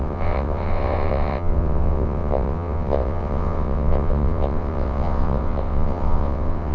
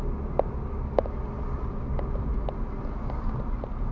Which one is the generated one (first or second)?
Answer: first